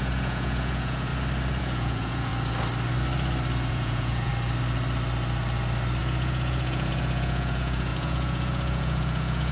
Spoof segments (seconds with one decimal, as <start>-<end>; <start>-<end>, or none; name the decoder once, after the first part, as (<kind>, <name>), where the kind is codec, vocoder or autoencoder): 0.0-1.1 (vocoder, Vocos); 1.6-2.3; 3.7-4.3; 6.0-9.5